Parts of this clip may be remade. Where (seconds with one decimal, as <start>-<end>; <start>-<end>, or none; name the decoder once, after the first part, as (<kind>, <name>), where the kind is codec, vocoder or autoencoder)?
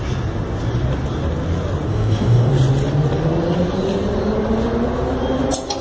1.9-2.5 (codec, DAC)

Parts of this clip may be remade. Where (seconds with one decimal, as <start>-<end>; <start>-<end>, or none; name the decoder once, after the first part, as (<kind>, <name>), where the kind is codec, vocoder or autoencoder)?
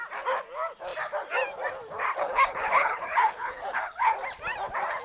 2.2-4.1 (codec, HILCodec)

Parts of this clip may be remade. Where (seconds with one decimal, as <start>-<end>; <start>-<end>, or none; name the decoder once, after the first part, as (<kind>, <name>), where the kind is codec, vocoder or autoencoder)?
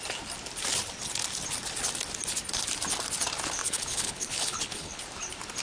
3.6-5.0 (codec, HILCodec)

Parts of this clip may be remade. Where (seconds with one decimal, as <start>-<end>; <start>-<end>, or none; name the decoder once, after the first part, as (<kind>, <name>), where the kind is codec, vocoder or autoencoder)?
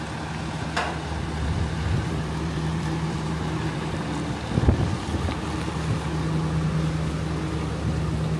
0.4-5.3 (vocoder, BigVGAN v2)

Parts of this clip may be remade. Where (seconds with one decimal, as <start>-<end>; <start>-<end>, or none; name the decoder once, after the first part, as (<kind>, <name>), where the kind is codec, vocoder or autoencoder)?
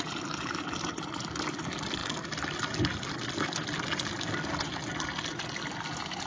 none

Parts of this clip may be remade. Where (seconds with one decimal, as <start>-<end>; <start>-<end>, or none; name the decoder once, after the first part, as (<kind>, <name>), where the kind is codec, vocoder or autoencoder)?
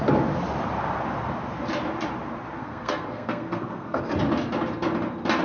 2.6-4.0 (codec, SNAC)